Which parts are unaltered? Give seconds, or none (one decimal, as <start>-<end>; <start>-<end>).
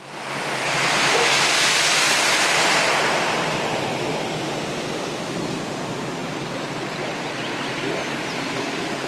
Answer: 0.0-9.1